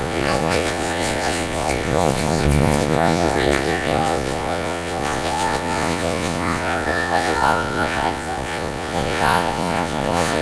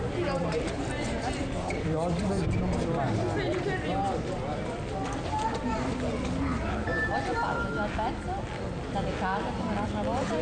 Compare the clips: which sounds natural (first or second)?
second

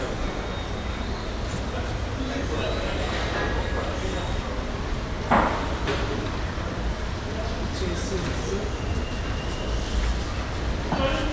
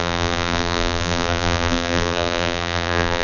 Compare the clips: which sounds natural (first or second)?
first